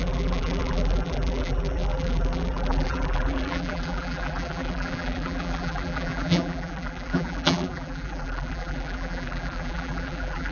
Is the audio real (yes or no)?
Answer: no